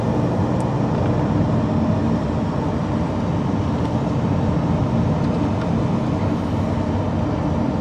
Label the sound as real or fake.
real